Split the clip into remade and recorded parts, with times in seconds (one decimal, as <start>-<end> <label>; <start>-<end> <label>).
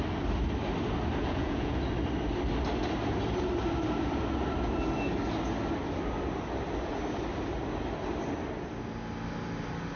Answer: 0.0-1.2 recorded; 1.2-1.8 remade; 1.8-10.0 recorded